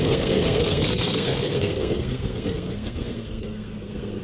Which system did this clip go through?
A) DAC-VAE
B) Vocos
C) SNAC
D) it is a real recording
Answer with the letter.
C